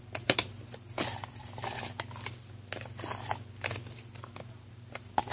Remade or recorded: recorded